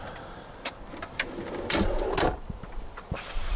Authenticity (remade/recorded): recorded